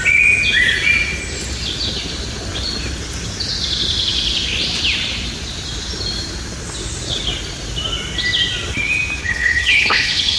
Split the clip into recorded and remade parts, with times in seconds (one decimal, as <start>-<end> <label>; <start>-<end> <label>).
0.0-9.2 recorded; 9.2-10.4 remade